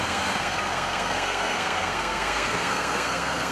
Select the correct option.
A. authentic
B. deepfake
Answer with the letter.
B